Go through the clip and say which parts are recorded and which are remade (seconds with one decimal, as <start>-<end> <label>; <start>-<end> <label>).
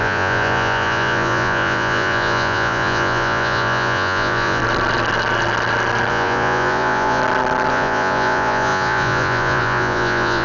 0.0-4.6 remade; 4.6-6.1 recorded; 6.1-7.2 remade; 7.2-7.7 recorded; 7.7-10.4 remade